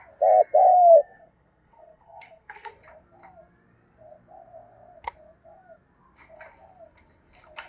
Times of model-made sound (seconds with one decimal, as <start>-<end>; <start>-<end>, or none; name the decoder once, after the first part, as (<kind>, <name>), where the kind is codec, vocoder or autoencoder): 0.7-2.7 (codec, SNAC)